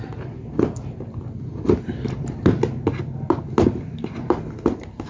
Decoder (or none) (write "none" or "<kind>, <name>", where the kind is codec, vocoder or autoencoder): none